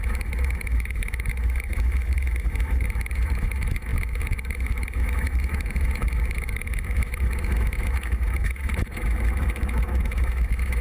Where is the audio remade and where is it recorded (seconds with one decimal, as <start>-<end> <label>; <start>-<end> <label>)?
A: 0.0-10.8 remade